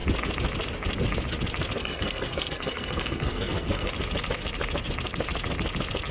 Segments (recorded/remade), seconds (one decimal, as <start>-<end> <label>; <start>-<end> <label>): 0.0-1.8 recorded; 1.8-3.9 remade; 3.9-6.1 recorded